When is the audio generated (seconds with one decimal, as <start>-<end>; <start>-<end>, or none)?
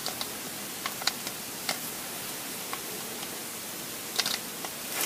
none